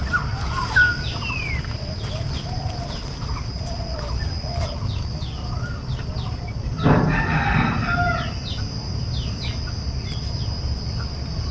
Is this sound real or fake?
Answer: real